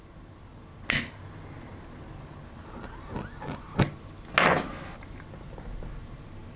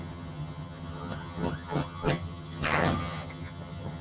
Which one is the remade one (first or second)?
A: second